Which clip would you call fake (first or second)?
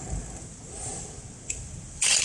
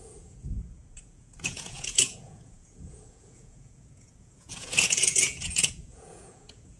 second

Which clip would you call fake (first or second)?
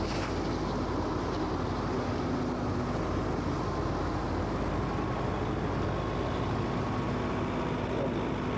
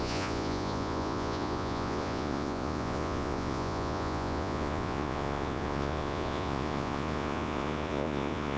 second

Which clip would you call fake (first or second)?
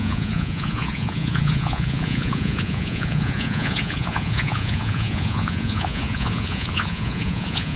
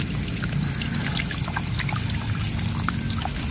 first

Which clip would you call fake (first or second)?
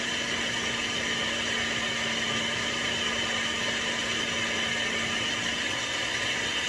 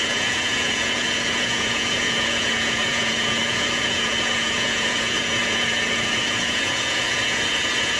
second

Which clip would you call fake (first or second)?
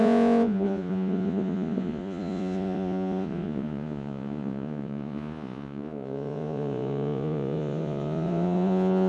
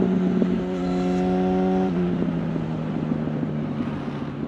first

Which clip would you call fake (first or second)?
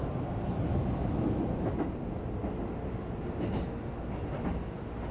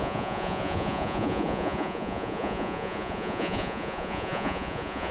second